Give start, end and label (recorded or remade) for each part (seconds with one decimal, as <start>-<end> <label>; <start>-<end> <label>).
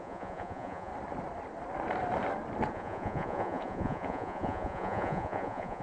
0.0-0.9 remade; 0.9-2.7 recorded; 2.7-5.8 remade